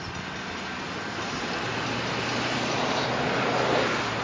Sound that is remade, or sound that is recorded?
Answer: recorded